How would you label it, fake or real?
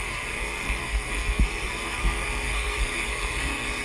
fake